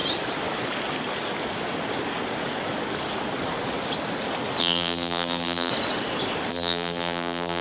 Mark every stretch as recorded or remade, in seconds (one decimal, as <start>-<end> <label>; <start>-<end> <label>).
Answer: 0.0-4.6 recorded; 4.6-5.7 remade; 5.7-6.5 recorded; 6.5-7.6 remade